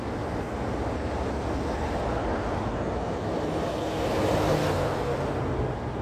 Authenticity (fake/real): real